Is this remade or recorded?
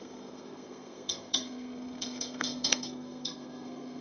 remade